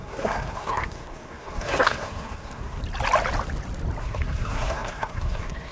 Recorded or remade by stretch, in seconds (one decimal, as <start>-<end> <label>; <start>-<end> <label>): 0.0-2.8 remade; 2.8-4.0 recorded; 4.0-5.7 remade